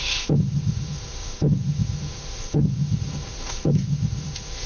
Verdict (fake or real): fake